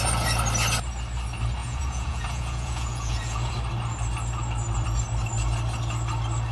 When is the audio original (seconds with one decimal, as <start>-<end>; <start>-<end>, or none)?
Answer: 0.0-1.6; 3.5-6.5